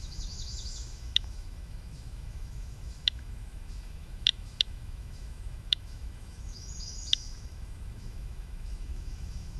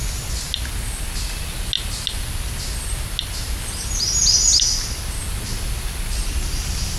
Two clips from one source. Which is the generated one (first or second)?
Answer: first